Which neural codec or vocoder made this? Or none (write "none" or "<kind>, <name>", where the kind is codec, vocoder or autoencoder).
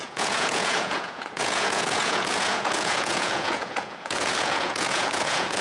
vocoder, Vocos